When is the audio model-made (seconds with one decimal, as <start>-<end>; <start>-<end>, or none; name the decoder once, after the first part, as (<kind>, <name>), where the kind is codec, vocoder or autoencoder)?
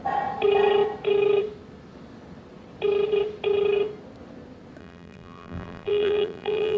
4.8-6.8 (vocoder, BigVGAN v2)